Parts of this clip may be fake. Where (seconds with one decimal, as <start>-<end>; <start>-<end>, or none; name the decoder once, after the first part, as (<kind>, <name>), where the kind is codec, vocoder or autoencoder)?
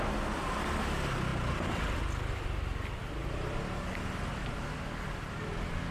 none